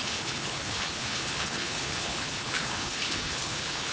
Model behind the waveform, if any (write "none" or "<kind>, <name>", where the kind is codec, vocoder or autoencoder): codec, HILCodec